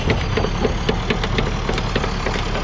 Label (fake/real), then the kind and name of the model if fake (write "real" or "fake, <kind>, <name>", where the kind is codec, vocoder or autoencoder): real